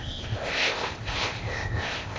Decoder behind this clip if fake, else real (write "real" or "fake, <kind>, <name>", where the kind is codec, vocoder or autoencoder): fake, codec, ZipCodec